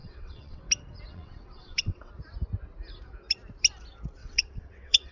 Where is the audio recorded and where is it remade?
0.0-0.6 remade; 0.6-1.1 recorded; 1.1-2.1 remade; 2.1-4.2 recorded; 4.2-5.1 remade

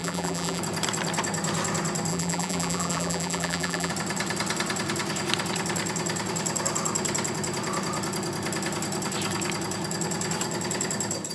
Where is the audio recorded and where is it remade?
0.0-0.6 remade; 0.6-2.1 recorded; 2.1-3.9 remade; 3.9-11.3 recorded

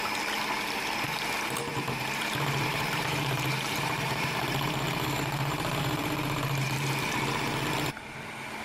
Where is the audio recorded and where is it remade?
0.0-1.7 recorded; 1.7-6.9 remade; 6.9-8.6 recorded

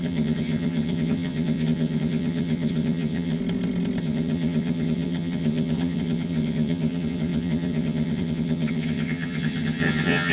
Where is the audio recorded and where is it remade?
0.0-3.4 remade; 3.4-4.0 recorded; 4.0-10.3 remade

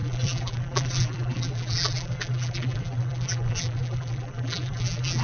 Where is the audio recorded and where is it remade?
0.0-5.2 remade

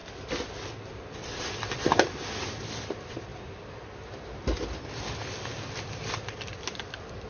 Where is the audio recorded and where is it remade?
0.0-0.7 recorded; 0.7-7.3 remade

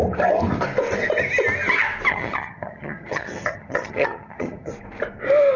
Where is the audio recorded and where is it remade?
0.0-2.1 recorded; 2.1-4.7 remade; 4.7-5.6 recorded

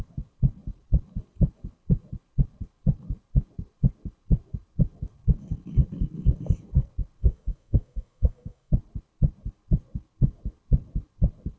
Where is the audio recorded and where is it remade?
0.0-7.2 recorded; 7.2-8.7 remade; 8.7-11.6 recorded